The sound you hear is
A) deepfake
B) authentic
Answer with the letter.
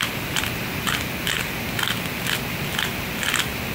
B